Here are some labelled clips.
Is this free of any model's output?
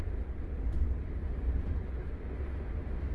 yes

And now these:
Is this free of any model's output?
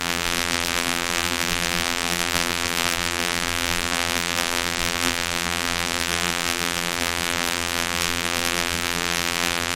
no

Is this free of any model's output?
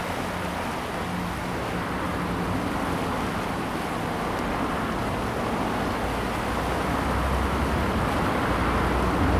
yes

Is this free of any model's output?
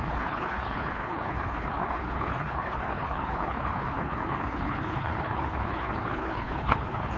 no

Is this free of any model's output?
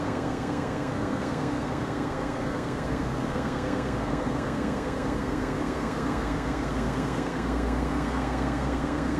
no